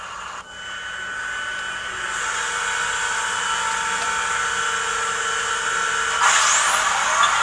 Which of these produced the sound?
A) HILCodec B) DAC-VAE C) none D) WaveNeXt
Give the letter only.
C